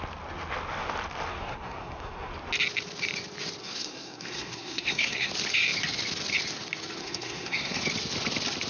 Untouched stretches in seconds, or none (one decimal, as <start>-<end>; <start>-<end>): 0.0-1.3; 2.3-3.6; 5.3-7.0; 7.8-8.7